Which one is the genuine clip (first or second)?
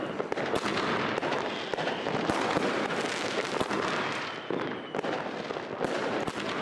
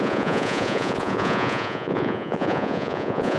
first